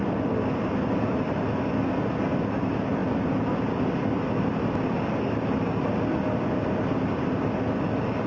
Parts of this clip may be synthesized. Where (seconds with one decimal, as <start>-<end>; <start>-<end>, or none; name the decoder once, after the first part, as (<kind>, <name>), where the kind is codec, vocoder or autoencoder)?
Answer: none